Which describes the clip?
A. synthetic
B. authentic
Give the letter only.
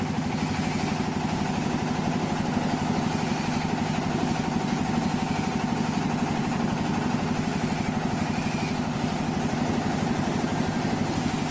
B